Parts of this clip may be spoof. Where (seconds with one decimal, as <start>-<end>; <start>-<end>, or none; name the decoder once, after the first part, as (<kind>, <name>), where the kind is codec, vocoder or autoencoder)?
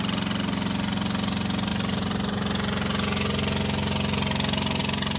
none